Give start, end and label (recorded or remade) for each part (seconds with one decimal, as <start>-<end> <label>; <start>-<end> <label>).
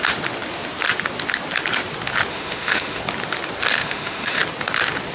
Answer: 0.0-2.3 recorded; 2.3-3.0 remade; 3.0-3.8 recorded; 3.8-4.4 remade; 4.4-5.1 recorded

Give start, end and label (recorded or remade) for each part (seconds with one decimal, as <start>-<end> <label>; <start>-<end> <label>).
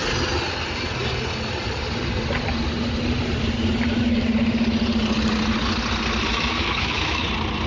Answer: 0.0-6.3 recorded; 6.3-7.2 remade; 7.2-7.7 recorded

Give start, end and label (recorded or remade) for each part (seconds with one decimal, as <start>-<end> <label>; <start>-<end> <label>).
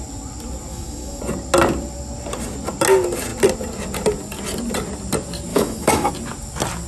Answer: 0.0-0.7 recorded; 0.7-1.2 remade; 1.2-5.5 recorded; 5.5-6.1 remade; 6.1-6.9 recorded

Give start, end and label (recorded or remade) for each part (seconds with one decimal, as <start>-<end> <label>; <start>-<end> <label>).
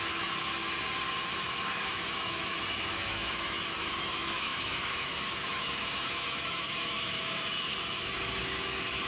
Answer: 0.0-0.5 remade; 0.5-1.1 recorded; 1.1-9.1 remade